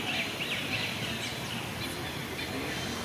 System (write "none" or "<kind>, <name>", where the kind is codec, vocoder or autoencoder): none